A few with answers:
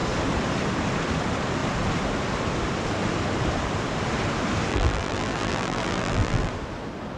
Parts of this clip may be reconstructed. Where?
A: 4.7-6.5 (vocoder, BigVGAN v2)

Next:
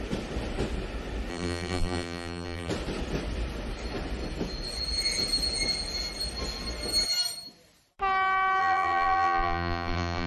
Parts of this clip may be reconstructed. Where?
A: 1.3-2.7 (vocoder, BigVGAN v2); 8.6-10.3

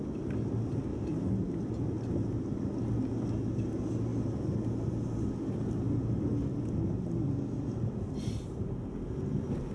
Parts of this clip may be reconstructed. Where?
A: none

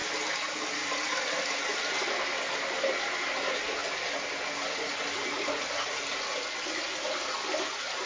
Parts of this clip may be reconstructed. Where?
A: 0.6-8.1 (vocoder, BigVGAN v2)

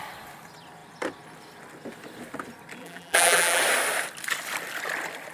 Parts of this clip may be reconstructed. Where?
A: 2.8-3.6 (vocoder, BigVGAN v2)

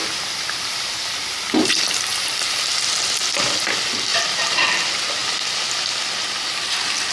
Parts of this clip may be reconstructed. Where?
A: 0.0-1.7 (vocoder, BigVGAN v2); 2.1-2.6; 4.1-4.6

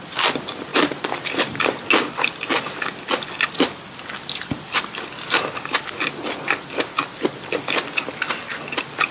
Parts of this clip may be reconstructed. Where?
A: 0.7-1.6 (vocoder, BigVGAN v2)